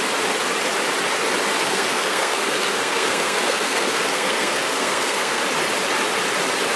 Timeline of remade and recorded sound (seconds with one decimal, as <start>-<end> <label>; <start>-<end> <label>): 0.0-1.6 recorded; 1.6-5.4 remade; 5.4-6.8 recorded